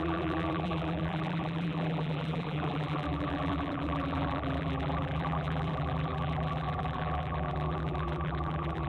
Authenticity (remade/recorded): remade